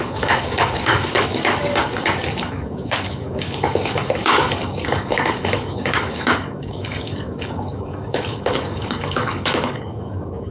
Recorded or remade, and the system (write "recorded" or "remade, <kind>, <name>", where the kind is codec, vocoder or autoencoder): remade, codec, DAC